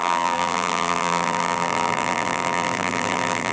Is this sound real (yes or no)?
no